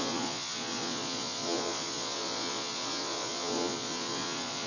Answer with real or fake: fake